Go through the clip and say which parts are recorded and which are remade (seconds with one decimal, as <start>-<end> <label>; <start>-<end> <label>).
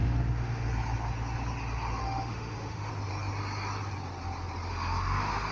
0.0-0.7 remade; 0.7-2.0 recorded; 2.0-2.9 remade; 2.9-4.7 recorded; 4.7-5.5 remade